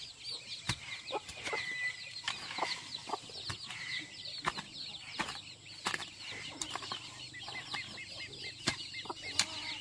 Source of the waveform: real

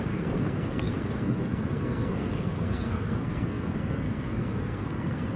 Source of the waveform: fake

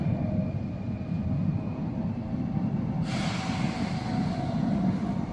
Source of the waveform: real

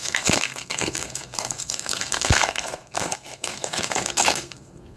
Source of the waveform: fake